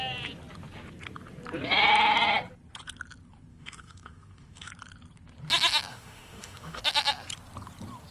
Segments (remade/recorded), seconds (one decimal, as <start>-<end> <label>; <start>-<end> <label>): 0.0-3.5 recorded; 3.5-4.7 remade; 4.7-5.9 recorded; 5.9-6.8 remade; 6.8-8.1 recorded